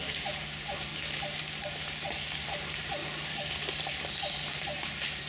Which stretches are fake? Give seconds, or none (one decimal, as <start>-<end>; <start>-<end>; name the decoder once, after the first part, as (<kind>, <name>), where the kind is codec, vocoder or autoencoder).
0.0-0.9 (vocoder, BigVGAN v2); 2.4-3.0; 3.9-5.3